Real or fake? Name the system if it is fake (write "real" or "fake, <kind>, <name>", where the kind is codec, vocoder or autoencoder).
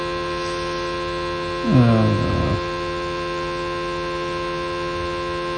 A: real